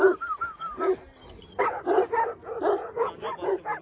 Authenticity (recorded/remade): recorded